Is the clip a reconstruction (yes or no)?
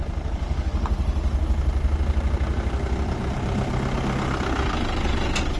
no